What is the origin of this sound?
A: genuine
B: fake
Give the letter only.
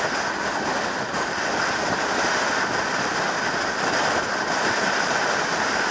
A